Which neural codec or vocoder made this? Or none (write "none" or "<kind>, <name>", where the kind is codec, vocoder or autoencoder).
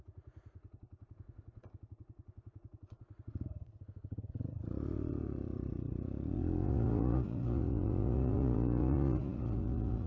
vocoder, Vocos